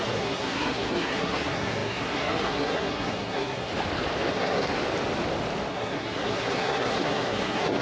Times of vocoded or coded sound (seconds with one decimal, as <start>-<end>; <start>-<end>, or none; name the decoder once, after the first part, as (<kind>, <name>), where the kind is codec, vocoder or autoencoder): 0.0-3.7 (codec, SNAC); 4.3-4.8; 5.7-7.8